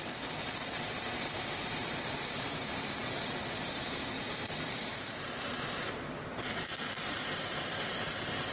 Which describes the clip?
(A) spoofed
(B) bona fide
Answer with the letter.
A